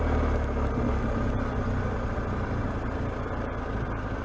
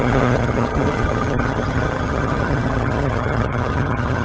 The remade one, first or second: second